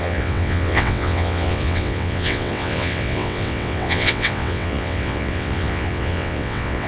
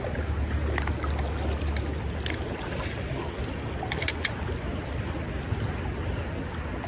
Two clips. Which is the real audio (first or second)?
second